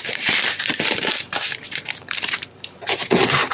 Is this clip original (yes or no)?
no